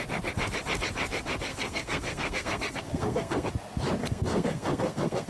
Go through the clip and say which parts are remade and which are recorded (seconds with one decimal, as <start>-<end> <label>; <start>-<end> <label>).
0.0-1.5 recorded; 1.5-3.5 remade; 3.5-4.0 recorded; 4.0-5.3 remade